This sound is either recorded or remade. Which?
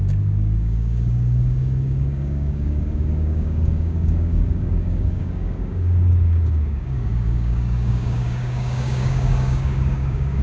remade